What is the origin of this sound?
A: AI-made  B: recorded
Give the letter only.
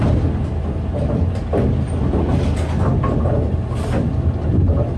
B